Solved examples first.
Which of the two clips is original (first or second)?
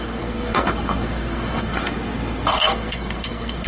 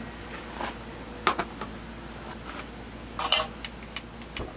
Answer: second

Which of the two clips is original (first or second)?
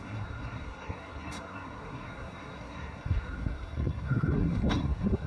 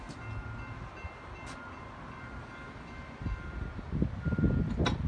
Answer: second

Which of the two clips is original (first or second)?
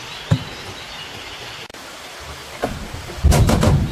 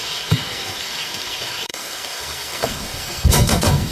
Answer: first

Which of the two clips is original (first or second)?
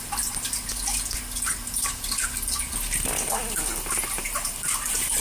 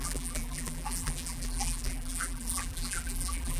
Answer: first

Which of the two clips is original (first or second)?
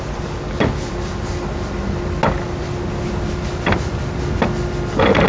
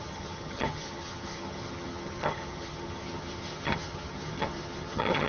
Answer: first